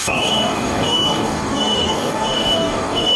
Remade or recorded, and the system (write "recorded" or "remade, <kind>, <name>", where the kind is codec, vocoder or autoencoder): remade, codec, DAC